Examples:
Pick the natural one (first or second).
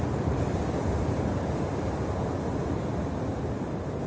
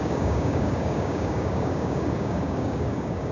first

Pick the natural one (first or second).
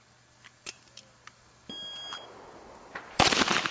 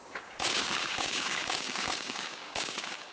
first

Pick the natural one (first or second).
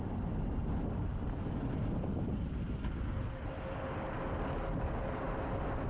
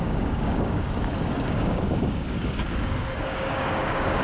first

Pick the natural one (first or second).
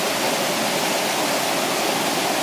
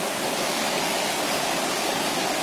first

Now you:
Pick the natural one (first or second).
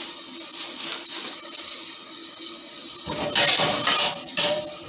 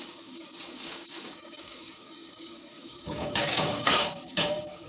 first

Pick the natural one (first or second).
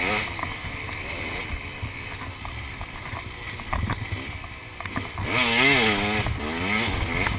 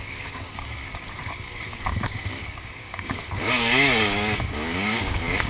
first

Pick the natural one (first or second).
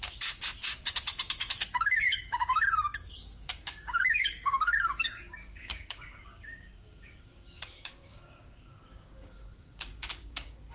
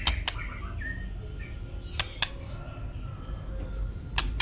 second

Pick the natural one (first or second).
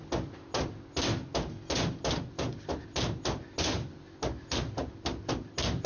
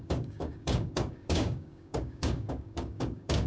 first